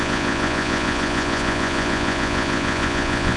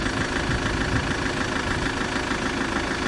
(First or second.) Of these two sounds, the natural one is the second